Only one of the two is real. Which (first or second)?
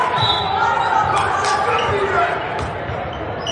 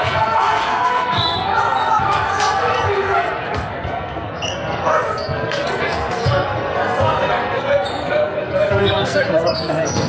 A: first